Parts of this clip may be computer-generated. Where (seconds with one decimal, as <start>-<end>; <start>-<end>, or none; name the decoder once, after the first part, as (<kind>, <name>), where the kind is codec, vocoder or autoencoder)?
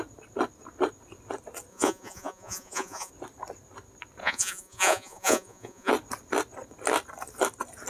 1.7-3.1 (vocoder, Vocos); 4.2-5.9